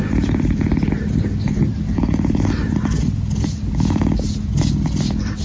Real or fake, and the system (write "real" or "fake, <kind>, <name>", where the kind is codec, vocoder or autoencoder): real